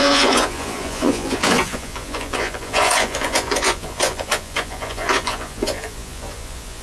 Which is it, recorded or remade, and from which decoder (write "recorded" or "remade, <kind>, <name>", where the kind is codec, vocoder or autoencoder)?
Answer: remade, vocoder, Vocos